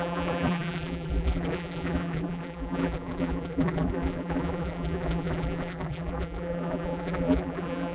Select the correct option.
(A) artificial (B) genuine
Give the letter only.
A